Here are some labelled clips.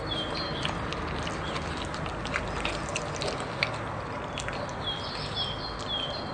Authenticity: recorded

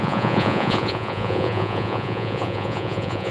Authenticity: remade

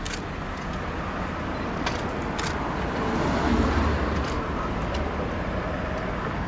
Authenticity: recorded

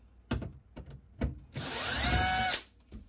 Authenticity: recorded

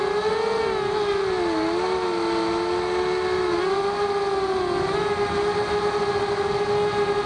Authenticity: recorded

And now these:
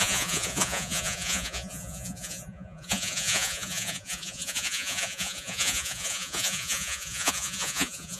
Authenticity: remade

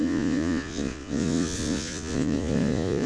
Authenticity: remade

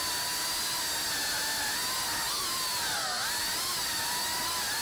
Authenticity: recorded